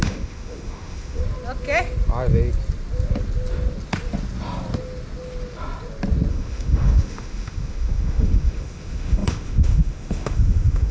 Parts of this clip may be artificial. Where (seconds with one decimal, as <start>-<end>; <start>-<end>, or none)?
0.0-1.2; 6.3-10.9